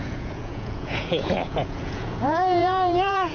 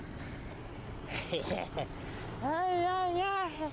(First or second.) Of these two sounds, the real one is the second